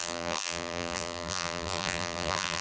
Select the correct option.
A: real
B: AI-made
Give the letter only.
B